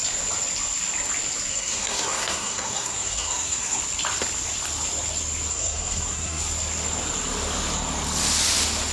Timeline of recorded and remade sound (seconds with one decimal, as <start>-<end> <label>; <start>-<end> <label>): 0.0-1.5 recorded; 1.5-3.8 remade; 3.8-5.5 recorded; 5.5-6.4 remade; 6.4-8.9 recorded